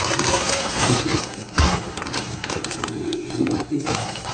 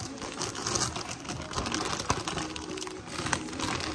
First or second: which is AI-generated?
first